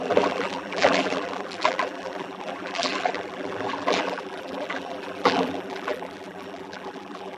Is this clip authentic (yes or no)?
no